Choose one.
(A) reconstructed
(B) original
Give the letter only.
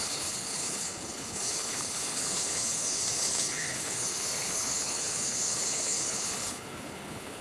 A